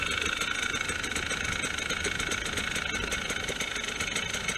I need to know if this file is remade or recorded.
recorded